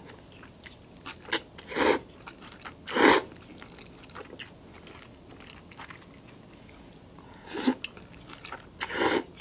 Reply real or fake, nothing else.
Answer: real